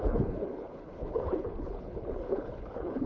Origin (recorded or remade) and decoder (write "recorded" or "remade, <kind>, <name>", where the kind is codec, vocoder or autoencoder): remade, codec, HILCodec